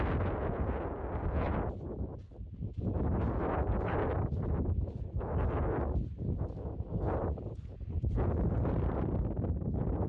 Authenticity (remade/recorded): recorded